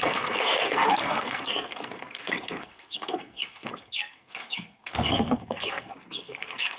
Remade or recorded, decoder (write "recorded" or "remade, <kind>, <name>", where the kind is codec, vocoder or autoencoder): remade, codec, SNAC